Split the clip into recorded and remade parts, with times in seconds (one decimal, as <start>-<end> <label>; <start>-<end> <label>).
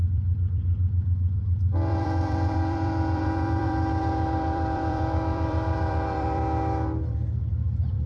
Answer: 0.0-6.4 remade; 6.4-7.5 recorded; 7.5-8.1 remade